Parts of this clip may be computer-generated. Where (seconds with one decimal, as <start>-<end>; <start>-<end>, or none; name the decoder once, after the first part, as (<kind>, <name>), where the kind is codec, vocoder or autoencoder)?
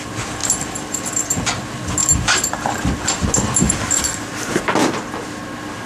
0.4-1.1 (vocoder, BigVGAN v2); 2.0-4.6